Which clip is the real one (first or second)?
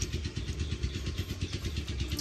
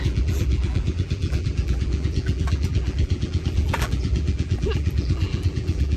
first